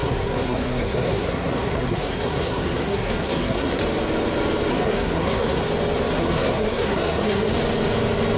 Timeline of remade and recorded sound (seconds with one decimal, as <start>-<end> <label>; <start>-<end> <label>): 0.0-3.8 remade; 3.8-4.7 recorded; 4.7-5.6 remade; 5.6-6.1 recorded; 6.1-7.5 remade; 7.5-8.4 recorded